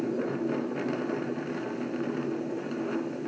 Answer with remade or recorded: recorded